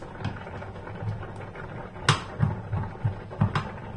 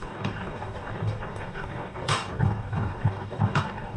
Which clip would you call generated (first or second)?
second